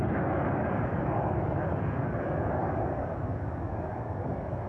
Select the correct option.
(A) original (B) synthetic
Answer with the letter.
B